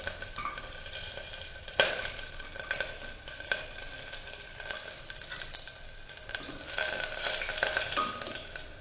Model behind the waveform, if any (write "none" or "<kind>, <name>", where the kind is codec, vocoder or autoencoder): none